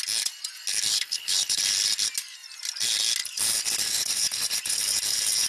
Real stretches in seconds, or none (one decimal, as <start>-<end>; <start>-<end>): 0.0-0.9; 1.6-5.5